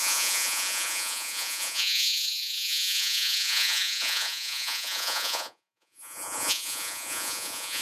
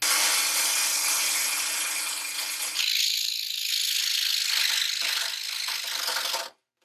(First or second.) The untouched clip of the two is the second